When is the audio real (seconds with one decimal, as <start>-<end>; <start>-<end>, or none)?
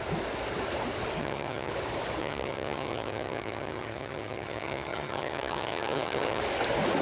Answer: 0.0-1.2; 1.7-2.2; 6.4-7.0